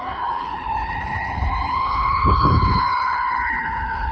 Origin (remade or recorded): remade